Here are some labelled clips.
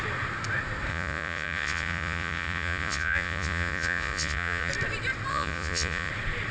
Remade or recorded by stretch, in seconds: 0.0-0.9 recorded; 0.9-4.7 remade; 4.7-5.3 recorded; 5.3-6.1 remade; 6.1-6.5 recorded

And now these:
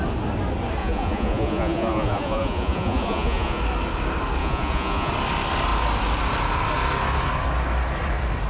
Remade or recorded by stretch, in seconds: 0.0-0.8 recorded; 0.8-3.6 remade; 3.6-4.4 recorded; 4.4-5.1 remade; 5.1-8.5 recorded

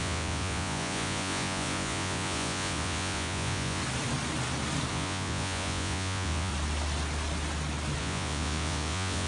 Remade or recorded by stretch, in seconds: 0.0-3.8 remade; 3.8-4.9 recorded; 4.9-6.5 remade; 6.5-8.0 recorded; 8.0-9.3 remade

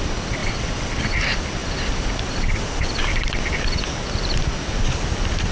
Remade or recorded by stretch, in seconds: 0.0-5.5 recorded

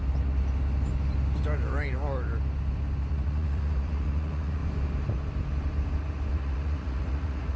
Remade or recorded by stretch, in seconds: 0.0-3.1 recorded; 3.1-4.6 remade; 4.6-6.3 recorded; 6.3-7.6 remade